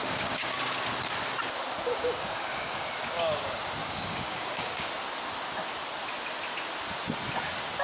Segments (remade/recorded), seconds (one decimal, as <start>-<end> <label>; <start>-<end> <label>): 0.0-0.6 remade; 0.6-1.9 recorded; 1.9-2.9 remade; 2.9-3.8 recorded; 3.8-4.9 remade; 4.9-7.8 recorded